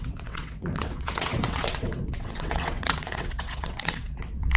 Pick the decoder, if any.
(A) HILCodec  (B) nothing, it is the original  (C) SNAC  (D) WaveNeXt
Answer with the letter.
D